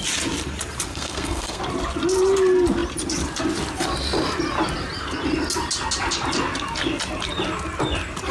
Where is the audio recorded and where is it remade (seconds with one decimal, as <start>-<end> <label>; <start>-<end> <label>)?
0.0-0.9 recorded; 0.9-1.6 remade; 1.6-8.3 recorded